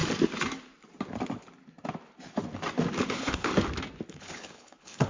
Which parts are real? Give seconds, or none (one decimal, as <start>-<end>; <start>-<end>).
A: 0.0-3.1; 3.5-4.1